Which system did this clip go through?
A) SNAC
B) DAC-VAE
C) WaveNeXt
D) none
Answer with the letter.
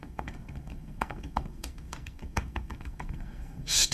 A